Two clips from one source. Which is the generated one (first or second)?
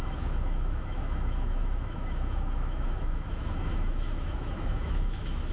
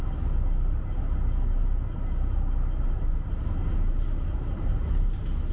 first